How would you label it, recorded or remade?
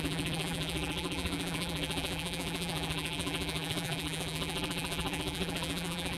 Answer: remade